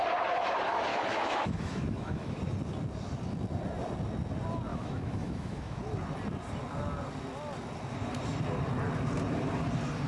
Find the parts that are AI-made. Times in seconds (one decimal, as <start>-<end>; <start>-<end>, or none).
0.9-2.4; 4.7-5.8